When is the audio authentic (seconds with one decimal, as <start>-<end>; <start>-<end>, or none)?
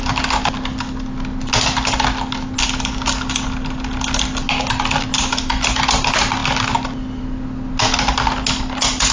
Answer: 0.0-9.1